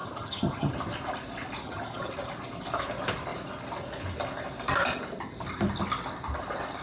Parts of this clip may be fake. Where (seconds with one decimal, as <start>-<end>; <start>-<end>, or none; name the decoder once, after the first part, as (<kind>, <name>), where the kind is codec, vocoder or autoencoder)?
0.0-0.7 (vocoder, HiFi-GAN); 1.6-2.1